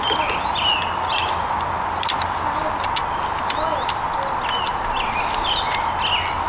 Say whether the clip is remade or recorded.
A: recorded